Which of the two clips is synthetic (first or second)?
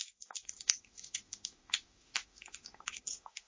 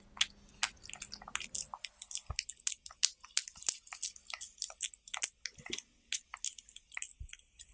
first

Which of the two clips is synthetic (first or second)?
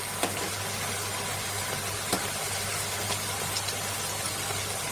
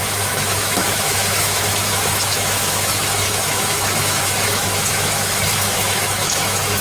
second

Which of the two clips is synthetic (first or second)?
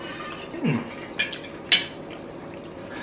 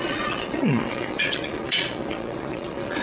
second